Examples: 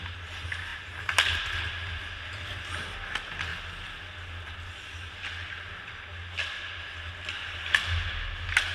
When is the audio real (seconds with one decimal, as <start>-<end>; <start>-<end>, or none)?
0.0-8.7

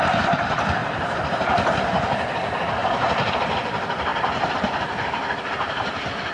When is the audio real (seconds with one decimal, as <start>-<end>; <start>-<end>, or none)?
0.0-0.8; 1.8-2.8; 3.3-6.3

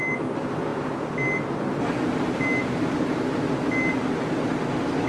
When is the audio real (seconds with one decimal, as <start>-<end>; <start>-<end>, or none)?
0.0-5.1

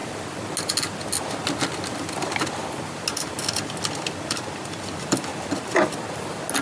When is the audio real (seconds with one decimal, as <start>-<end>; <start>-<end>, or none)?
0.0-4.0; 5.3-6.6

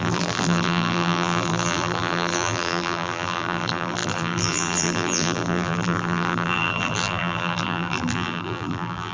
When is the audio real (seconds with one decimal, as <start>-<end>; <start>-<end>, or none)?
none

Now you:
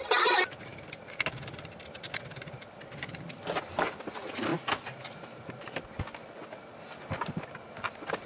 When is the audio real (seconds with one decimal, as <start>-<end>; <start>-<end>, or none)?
0.0-0.7; 4.0-8.3

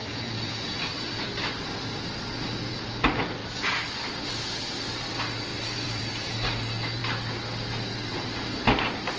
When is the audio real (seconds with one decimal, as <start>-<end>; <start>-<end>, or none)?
2.7-3.4; 4.3-5.5; 6.3-9.2

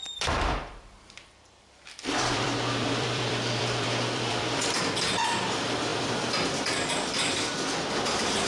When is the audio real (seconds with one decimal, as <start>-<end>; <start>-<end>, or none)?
none